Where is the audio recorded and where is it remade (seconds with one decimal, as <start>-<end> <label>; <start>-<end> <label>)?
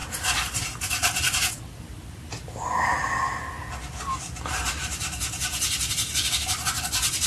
0.0-7.3 recorded